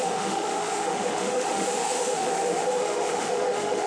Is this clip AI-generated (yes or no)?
yes